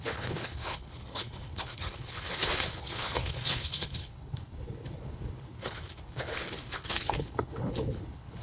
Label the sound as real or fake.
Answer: fake